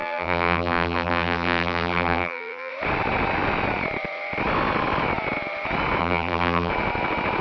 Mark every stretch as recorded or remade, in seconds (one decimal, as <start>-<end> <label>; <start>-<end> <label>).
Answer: 0.0-2.7 remade; 2.7-6.0 recorded; 6.0-6.7 remade; 6.7-7.4 recorded